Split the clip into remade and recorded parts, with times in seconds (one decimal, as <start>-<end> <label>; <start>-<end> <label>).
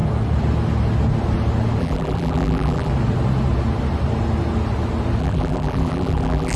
0.0-1.8 recorded; 1.8-2.9 remade; 2.9-5.2 recorded; 5.2-6.6 remade